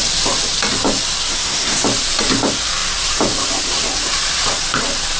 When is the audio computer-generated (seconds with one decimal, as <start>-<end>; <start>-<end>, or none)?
1.2-1.8